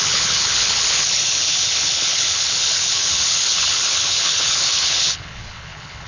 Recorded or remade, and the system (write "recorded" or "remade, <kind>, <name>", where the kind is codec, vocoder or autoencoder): remade, codec, HILCodec